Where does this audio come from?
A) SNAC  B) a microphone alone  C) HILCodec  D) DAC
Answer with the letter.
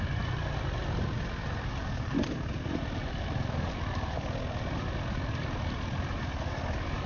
B